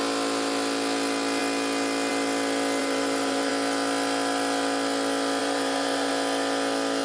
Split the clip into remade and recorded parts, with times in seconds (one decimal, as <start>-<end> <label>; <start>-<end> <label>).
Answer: 0.0-2.8 recorded; 2.8-3.5 remade; 3.5-5.4 recorded; 5.4-6.1 remade; 6.1-7.0 recorded